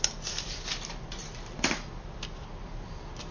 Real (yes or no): yes